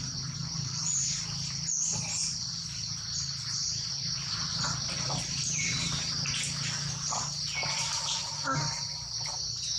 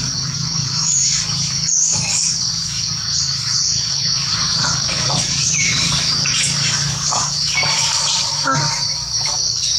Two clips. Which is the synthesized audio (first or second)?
second